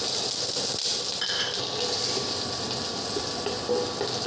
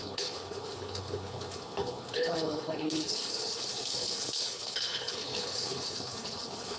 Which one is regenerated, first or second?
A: second